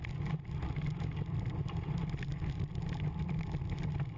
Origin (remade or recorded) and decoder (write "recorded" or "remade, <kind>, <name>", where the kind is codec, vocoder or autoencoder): recorded